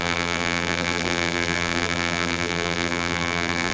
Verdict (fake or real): fake